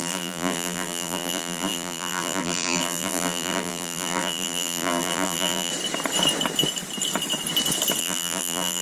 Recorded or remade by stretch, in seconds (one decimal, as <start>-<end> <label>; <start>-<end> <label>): 0.0-5.7 remade; 5.7-8.0 recorded; 8.0-8.8 remade